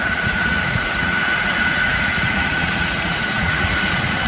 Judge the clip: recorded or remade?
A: remade